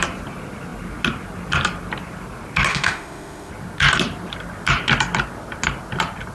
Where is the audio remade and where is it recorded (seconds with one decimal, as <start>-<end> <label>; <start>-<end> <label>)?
0.0-2.7 recorded; 2.7-3.5 remade; 3.5-6.3 recorded